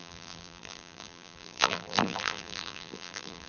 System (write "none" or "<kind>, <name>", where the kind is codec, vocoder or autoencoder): vocoder, BigVGAN v2